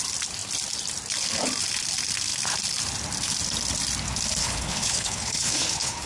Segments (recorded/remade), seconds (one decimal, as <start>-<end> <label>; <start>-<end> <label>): 0.0-4.4 recorded; 4.4-6.1 remade